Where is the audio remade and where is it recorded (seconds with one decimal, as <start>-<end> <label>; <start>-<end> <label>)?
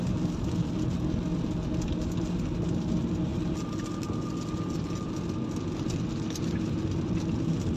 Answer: 0.0-7.8 recorded